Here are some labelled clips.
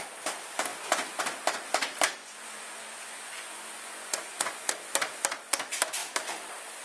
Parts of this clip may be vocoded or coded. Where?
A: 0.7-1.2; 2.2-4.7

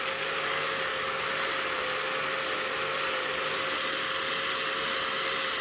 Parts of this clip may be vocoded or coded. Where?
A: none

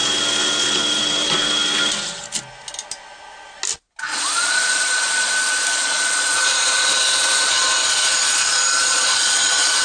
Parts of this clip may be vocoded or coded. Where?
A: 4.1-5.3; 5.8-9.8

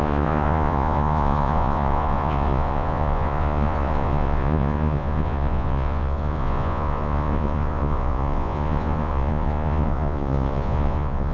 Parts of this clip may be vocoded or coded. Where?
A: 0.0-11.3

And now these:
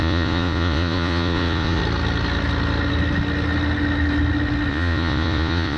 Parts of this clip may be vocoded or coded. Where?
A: 0.0-1.8; 4.7-5.8

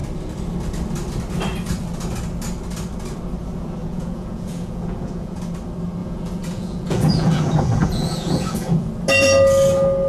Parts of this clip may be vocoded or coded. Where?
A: 3.8-5.4; 6.0-8.9